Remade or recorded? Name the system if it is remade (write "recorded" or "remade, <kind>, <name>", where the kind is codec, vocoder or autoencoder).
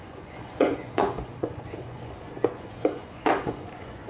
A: remade, vocoder, Vocos